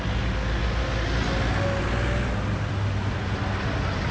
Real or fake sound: real